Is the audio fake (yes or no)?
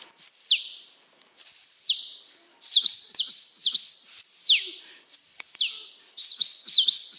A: yes